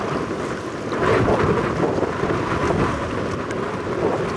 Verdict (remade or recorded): recorded